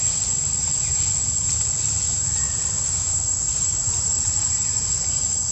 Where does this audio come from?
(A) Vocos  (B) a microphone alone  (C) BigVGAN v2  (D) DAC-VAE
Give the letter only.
B